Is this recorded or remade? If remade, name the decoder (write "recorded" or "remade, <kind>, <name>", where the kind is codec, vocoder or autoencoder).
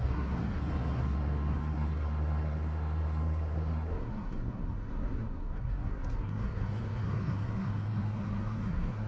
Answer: remade, codec, SNAC